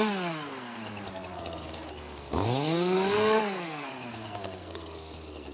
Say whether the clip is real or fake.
fake